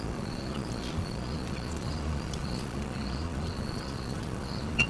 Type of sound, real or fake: fake